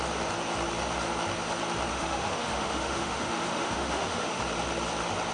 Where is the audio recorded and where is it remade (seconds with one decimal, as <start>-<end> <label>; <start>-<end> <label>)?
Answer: 0.0-1.9 recorded; 1.9-4.4 remade; 4.4-5.3 recorded